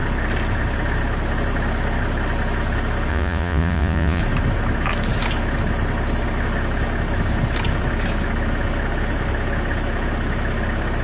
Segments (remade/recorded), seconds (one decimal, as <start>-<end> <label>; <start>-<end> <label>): 0.0-3.1 recorded; 3.1-4.2 remade; 4.2-11.0 recorded